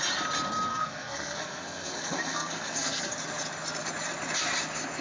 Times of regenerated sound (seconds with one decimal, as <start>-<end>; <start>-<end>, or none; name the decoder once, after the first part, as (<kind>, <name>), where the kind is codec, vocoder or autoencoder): 0.7-3.1 (codec, SNAC)